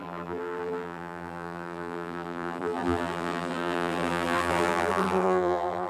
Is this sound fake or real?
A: fake